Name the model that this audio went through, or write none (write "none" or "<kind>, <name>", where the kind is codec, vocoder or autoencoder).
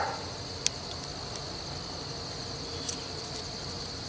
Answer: none